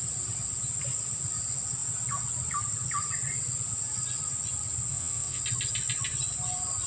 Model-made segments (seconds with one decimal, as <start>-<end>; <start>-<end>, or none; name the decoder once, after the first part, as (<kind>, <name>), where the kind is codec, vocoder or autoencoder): 4.9-5.4 (vocoder, WaveNeXt)